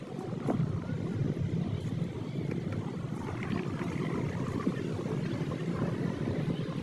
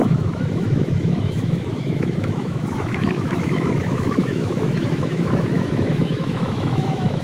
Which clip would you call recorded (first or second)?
first